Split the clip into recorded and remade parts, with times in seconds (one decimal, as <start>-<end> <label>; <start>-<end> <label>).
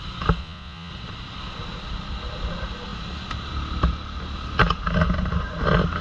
0.0-0.4 recorded; 0.4-0.9 remade; 0.9-6.0 recorded